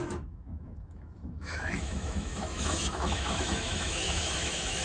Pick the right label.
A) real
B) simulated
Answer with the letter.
B